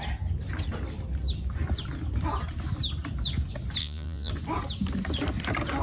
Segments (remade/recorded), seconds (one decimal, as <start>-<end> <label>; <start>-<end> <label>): 0.0-3.8 recorded; 3.8-4.3 remade; 4.3-5.8 recorded